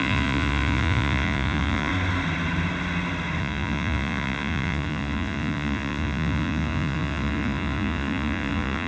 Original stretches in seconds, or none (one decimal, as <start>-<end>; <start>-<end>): 1.9-3.4

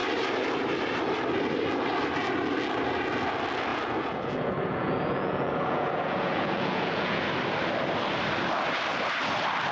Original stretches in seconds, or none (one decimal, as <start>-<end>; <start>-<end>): 0.0-3.7; 7.2-9.7

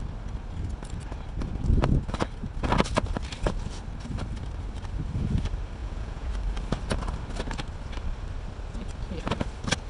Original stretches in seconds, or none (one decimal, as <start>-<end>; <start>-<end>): 0.0-5.8; 6.3-9.9

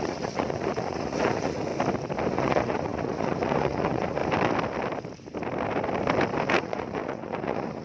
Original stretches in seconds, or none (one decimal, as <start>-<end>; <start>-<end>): 1.7-2.3; 4.2-6.5

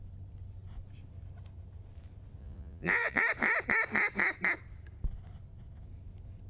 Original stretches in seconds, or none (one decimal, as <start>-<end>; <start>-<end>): 0.0-2.4; 3.2-6.5

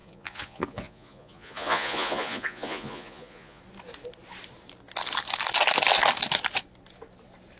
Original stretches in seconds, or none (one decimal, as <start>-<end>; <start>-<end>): 3.6-7.6

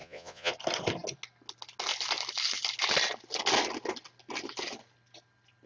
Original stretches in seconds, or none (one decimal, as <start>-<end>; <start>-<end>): 0.5-5.7

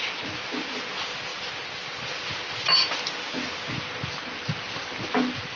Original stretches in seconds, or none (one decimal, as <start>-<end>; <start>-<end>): 0.0-5.6